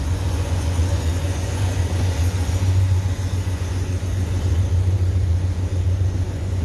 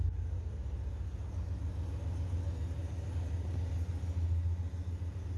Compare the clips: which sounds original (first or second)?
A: second